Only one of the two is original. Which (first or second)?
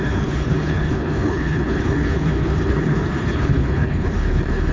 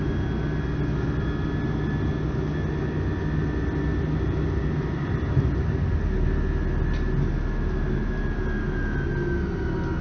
second